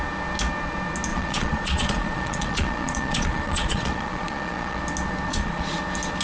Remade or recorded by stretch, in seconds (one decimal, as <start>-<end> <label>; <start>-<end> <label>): 0.0-1.1 recorded; 1.1-4.8 remade; 4.8-5.3 recorded; 5.3-5.8 remade; 5.8-6.2 recorded